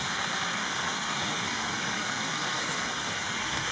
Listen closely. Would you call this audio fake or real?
fake